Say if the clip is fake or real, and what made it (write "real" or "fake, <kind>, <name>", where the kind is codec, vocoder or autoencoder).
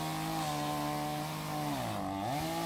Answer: real